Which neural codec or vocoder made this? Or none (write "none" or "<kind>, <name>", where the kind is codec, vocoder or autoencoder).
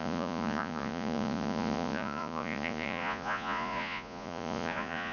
vocoder, Vocos